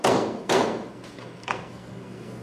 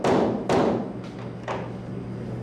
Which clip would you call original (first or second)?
second